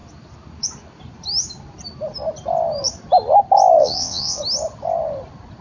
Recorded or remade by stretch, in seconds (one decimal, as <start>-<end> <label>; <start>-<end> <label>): 0.0-3.8 recorded; 3.8-4.4 remade; 4.4-5.6 recorded